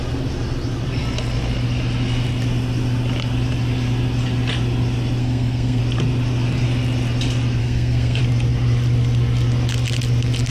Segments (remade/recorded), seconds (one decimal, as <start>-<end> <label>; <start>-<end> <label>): 0.0-5.2 recorded; 5.2-5.8 remade; 5.8-7.6 recorded; 7.6-8.2 remade; 8.2-10.5 recorded